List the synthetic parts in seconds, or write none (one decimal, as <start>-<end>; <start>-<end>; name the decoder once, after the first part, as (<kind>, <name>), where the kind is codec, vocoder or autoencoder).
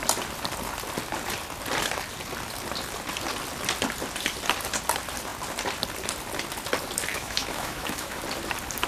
7.1-8.2 (autoencoder, DAC-VAE)